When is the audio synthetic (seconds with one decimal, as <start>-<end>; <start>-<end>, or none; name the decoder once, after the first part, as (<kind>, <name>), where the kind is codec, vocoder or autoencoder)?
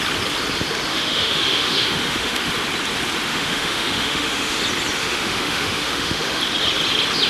0.9-2.5 (autoencoder, DAC-VAE); 3.3-4.6; 5.0-6.4